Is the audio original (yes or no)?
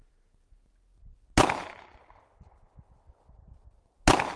yes